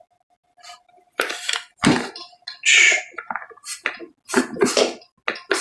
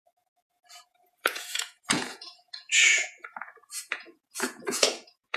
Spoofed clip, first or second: second